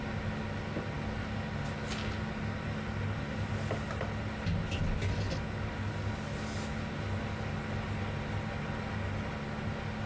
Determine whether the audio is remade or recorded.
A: recorded